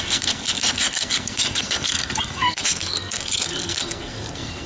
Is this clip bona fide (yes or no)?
no